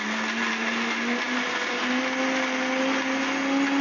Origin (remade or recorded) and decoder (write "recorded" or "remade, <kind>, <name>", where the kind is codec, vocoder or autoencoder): recorded